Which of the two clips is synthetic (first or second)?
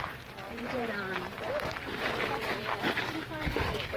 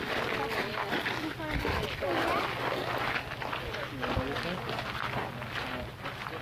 first